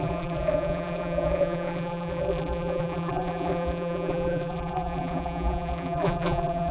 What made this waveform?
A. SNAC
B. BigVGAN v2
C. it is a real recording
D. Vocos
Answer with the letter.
B